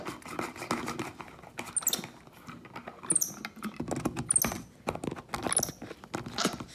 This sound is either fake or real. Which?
real